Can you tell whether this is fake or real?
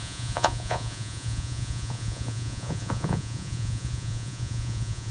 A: fake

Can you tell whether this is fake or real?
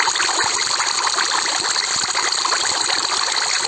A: real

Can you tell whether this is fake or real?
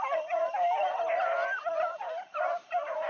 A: real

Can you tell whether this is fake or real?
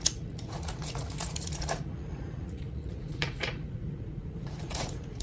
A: fake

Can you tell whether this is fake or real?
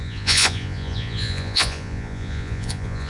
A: fake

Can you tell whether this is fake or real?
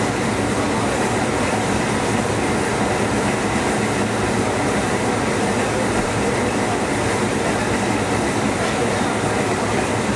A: real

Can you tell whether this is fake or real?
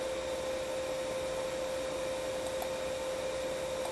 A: real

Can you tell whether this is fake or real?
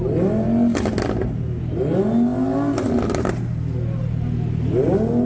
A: real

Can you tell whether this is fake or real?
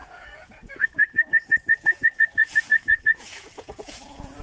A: fake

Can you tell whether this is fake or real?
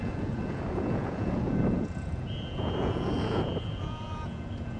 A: fake